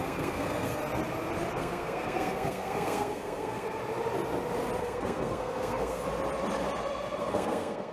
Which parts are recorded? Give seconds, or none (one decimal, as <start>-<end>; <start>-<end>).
0.8-1.5; 3.8-4.8; 6.0-7.2